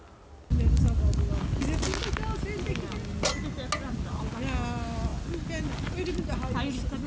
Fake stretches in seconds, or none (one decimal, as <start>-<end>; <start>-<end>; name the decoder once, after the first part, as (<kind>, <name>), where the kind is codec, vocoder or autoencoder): none